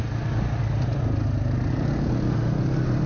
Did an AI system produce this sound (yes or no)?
no